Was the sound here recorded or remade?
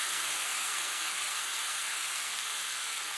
remade